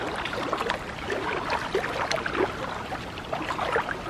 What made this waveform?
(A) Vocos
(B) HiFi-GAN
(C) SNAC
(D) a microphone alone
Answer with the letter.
D